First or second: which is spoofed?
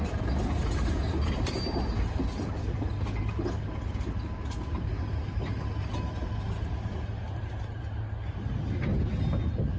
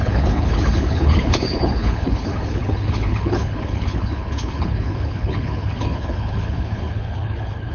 second